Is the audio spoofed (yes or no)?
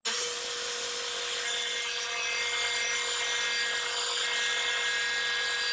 no